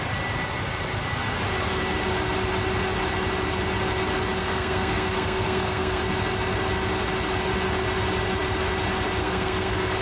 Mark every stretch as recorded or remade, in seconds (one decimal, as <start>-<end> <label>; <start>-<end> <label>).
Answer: 0.0-4.4 recorded; 4.4-6.0 remade; 6.0-9.2 recorded; 9.2-10.0 remade